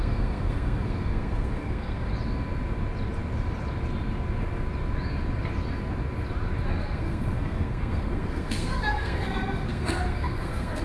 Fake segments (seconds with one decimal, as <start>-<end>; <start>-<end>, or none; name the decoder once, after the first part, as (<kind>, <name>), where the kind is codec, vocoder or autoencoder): 0.0-2.1 (codec, SNAC); 6.8-10.8

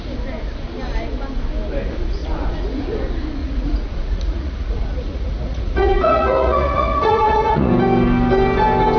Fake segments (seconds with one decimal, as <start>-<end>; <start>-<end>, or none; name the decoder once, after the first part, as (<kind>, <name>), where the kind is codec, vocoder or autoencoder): 2.2-2.8 (vocoder, Vocos); 3.4-7.7

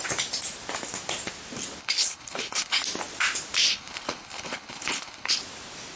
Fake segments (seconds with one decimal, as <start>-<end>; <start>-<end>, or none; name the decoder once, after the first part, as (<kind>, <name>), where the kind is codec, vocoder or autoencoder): 1.8-2.8 (codec, HILCodec); 3.7-5.4

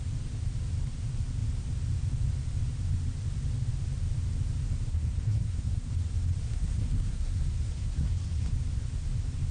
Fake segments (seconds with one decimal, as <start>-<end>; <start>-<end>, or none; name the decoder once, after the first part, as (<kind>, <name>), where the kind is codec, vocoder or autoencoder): 4.9-5.9 (codec, SNAC); 6.4-8.5

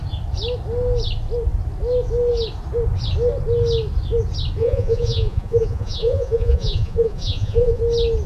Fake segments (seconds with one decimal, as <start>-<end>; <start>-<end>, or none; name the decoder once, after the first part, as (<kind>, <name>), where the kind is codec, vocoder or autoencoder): 4.6-7.8 (vocoder, Vocos)

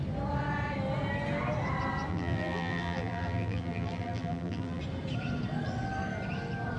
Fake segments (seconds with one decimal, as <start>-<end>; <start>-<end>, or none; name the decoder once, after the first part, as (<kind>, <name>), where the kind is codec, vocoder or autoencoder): 2.1-4.8 (vocoder, BigVGAN v2)

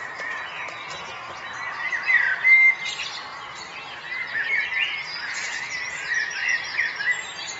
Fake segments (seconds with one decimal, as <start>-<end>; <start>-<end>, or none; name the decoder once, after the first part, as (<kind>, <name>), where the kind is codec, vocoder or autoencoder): 3.3-4.7 (vocoder, BigVGAN v2); 6.4-7.0